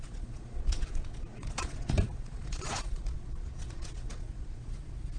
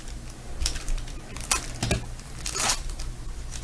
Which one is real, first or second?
second